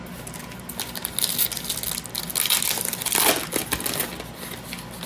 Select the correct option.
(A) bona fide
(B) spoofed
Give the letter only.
A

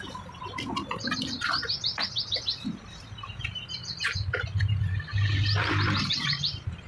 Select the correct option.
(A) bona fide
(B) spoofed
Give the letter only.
B